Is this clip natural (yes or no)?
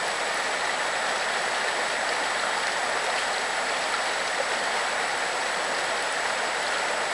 yes